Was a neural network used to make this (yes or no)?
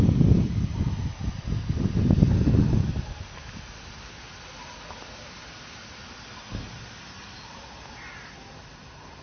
no